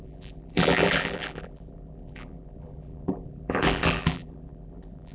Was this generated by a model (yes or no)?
yes